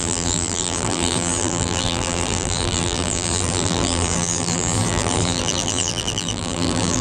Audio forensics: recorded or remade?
remade